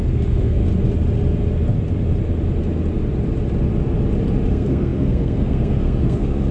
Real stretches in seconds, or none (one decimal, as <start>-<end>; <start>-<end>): 0.6-4.5